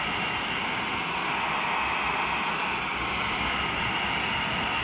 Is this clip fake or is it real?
real